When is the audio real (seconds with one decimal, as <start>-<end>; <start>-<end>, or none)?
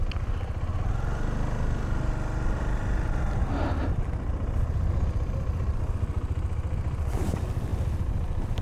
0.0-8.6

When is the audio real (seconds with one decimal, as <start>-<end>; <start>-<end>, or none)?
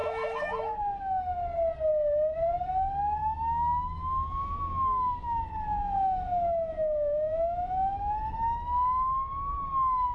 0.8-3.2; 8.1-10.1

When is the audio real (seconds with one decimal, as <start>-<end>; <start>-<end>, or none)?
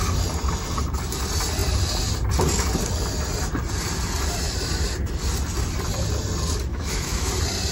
0.0-6.7; 7.3-7.7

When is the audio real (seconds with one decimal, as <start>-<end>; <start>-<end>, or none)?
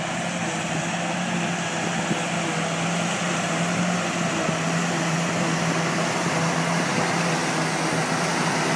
0.0-8.8